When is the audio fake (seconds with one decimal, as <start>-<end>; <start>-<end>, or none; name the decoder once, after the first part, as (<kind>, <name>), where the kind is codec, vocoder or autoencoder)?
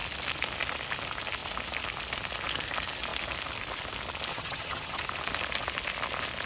4.3-5.0 (vocoder, HiFi-GAN)